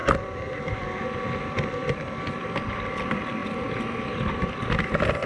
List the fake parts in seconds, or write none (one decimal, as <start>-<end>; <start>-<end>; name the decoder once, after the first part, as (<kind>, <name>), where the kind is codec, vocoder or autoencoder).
0.0-2.2 (vocoder, BigVGAN v2); 3.4-4.7

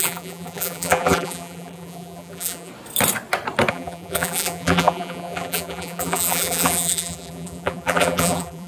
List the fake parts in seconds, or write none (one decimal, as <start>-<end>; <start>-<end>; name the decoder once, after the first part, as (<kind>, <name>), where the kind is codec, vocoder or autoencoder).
0.0-2.7 (vocoder, BigVGAN v2); 3.7-8.7

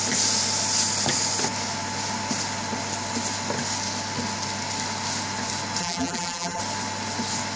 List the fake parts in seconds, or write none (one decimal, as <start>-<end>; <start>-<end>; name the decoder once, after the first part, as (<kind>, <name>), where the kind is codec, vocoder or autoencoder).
5.8-6.6 (vocoder, BigVGAN v2)

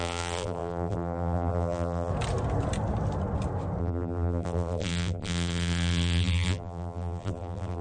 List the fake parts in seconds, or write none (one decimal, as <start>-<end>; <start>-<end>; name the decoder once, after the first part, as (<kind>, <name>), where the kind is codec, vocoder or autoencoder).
0.0-2.1 (vocoder, BigVGAN v2); 3.8-7.8

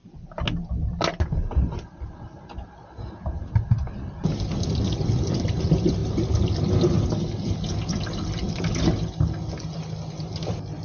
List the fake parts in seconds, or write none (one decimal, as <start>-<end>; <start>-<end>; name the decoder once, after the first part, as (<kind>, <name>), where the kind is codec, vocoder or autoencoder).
none